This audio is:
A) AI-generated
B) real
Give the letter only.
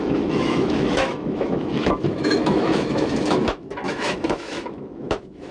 A